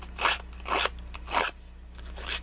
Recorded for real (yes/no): yes